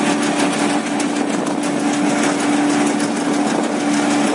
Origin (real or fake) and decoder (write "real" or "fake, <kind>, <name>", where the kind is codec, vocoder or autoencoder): real